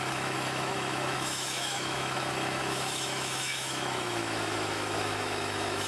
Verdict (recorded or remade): remade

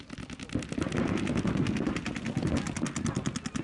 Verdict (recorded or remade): recorded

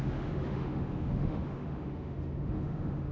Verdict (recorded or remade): remade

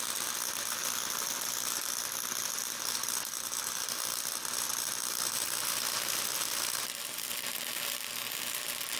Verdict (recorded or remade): recorded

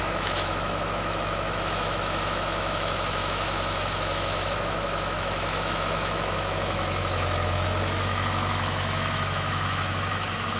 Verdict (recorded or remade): remade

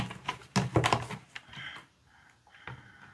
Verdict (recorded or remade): recorded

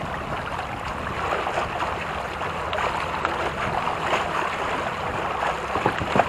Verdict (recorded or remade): recorded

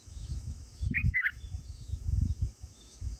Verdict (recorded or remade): remade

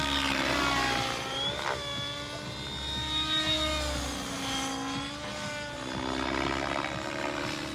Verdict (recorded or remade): recorded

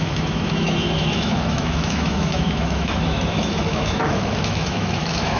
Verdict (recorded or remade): remade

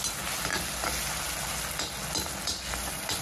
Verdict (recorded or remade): recorded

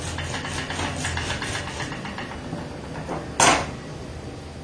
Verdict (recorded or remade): recorded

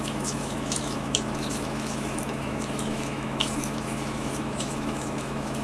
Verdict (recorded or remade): remade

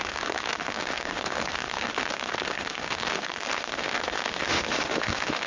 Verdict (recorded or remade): remade